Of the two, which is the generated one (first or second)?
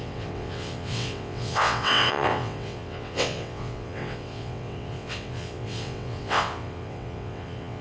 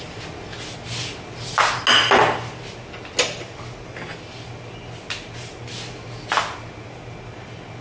first